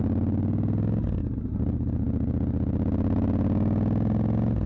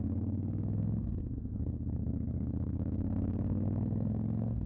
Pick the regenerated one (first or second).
second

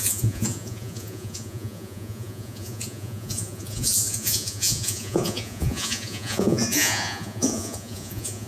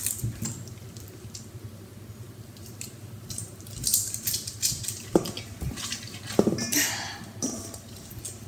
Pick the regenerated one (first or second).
first